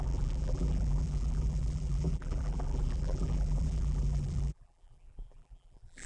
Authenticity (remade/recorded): remade